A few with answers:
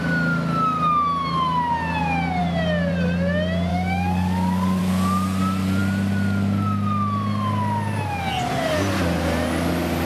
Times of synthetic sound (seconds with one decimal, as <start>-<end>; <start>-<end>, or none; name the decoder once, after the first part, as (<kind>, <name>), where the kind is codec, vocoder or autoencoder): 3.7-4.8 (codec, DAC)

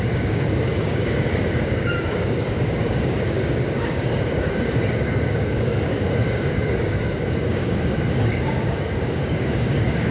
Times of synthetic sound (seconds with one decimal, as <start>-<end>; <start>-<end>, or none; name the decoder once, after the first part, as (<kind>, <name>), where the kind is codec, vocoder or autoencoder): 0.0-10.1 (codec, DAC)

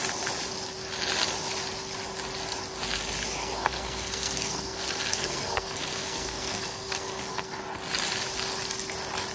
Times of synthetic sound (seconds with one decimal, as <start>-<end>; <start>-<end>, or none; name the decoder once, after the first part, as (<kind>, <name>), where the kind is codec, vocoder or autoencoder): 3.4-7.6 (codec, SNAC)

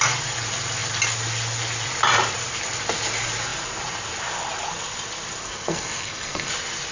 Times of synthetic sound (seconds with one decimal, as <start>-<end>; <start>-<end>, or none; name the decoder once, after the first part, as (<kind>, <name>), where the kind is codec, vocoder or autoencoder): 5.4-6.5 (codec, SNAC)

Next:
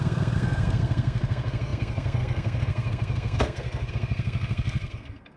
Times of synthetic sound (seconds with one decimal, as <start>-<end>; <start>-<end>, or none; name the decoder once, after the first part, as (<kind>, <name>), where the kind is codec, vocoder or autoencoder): 0.0-5.4 (codec, SNAC)